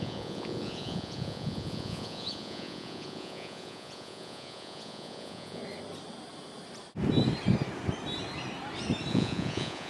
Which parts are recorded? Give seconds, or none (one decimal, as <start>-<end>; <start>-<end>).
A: 5.6-9.1